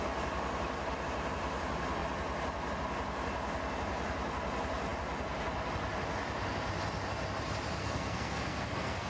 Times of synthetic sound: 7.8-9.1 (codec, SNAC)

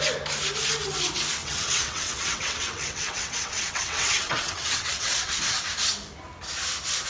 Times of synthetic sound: 1.4-5.4 (vocoder, WaveNeXt)

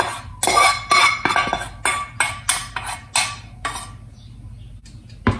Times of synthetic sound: none

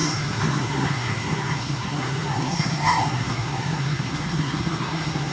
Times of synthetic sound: 0.0-5.3 (codec, SNAC)